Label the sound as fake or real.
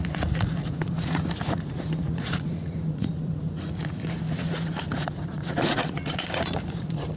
fake